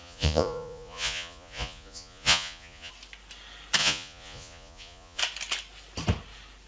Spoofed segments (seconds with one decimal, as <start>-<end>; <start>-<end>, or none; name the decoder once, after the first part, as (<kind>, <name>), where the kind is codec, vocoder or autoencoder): 0.0-2.9 (vocoder, Vocos); 3.8-5.2